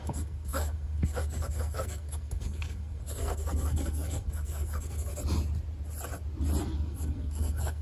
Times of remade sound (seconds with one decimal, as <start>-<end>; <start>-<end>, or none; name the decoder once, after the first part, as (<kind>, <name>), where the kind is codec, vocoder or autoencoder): 0.0-5.1 (codec, SNAC); 6.6-7.8